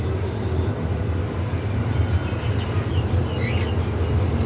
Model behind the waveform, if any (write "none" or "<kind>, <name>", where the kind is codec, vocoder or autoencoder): none